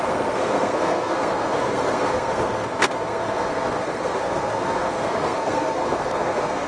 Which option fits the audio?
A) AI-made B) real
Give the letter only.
A